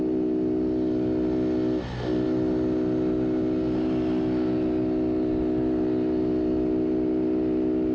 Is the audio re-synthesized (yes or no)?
no